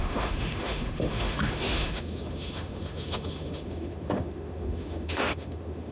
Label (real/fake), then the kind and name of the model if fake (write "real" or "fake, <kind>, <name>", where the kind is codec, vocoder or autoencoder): fake, autoencoder, DAC-VAE